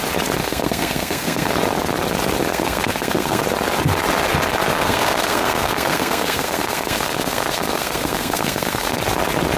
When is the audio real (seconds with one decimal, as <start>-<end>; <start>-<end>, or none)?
0.0-0.4; 1.5-2.5; 3.4-4.7; 9.0-9.6